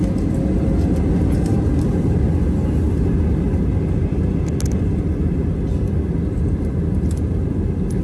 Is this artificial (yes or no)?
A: no